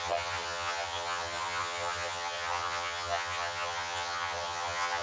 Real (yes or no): no